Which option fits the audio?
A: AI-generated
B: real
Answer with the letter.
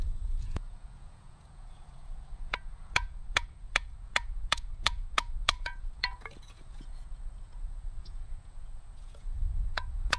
A